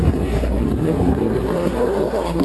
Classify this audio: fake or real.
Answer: fake